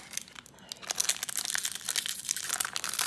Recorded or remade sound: recorded